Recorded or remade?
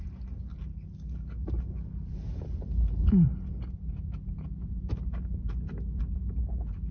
recorded